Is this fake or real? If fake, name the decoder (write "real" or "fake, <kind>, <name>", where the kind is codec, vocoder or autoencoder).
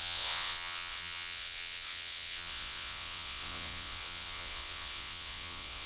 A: fake, vocoder, WaveNeXt